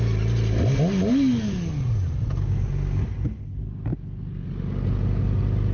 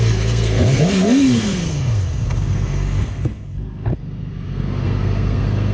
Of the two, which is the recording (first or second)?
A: first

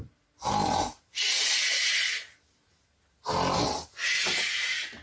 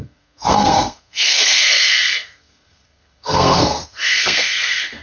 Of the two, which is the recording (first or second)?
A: first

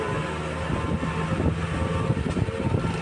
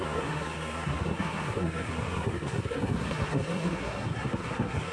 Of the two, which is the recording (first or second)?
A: first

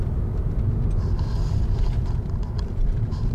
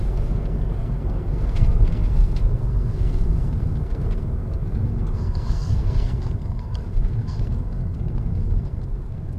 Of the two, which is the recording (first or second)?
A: first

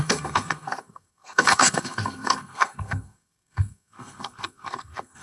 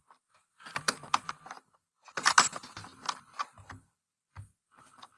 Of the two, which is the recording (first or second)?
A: second